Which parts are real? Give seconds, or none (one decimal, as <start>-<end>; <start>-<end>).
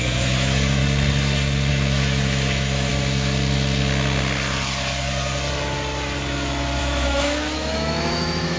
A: 0.8-1.7; 2.9-6.8